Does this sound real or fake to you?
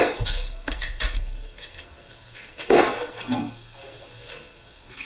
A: fake